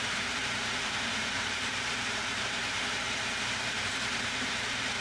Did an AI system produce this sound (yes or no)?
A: yes